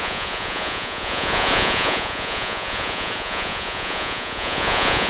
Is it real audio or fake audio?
fake